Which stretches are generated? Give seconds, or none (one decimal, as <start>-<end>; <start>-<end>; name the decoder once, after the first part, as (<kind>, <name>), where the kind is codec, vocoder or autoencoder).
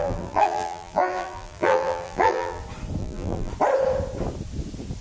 0.0-2.6 (vocoder, BigVGAN v2); 3.0-3.5